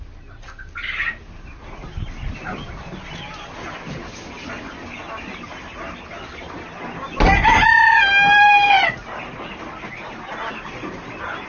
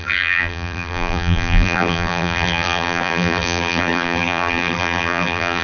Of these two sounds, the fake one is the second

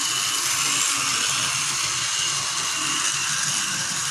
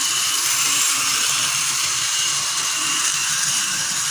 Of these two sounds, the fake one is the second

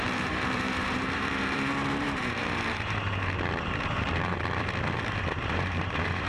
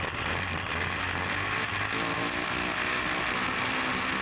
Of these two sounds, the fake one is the first